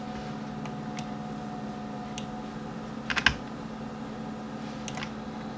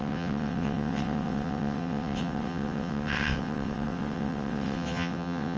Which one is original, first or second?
first